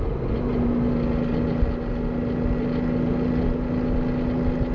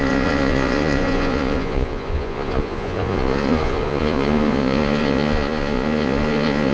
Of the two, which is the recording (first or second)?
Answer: first